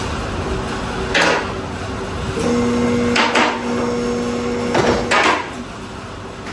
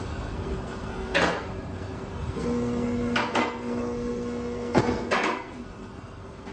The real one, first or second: first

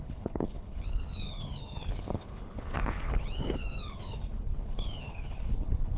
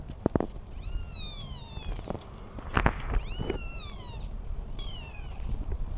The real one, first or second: second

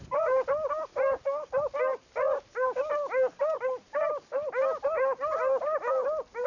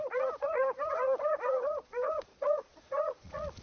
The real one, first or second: first